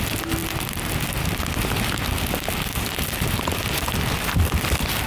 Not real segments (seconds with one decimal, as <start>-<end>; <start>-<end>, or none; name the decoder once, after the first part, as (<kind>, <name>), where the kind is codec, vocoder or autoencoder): 0.0-0.4 (vocoder, BigVGAN v2); 2.5-5.1